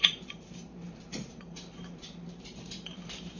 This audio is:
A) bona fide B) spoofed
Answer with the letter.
B